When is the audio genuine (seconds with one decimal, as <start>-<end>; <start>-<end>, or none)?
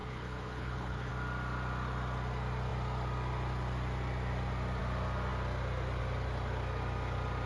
1.1-7.5